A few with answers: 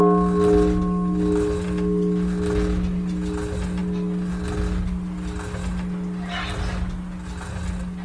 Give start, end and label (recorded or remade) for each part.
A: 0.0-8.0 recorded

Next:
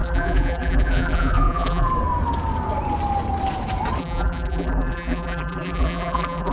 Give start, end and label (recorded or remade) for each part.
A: 0.0-1.9 remade; 1.9-4.0 recorded; 4.0-6.5 remade

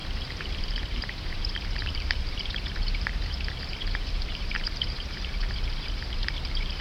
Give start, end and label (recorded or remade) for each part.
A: 0.0-6.8 remade

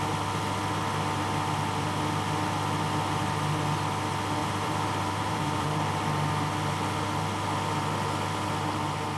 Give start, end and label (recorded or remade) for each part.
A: 0.0-4.4 recorded; 4.4-6.3 remade; 6.3-9.2 recorded

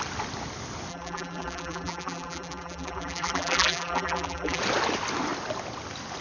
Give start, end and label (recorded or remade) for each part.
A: 0.0-0.9 recorded; 0.9-4.6 remade; 4.6-6.2 recorded